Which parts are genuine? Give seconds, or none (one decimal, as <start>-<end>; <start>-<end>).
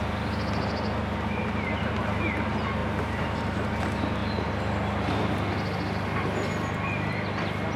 0.0-1.4; 2.0-2.8; 3.8-7.8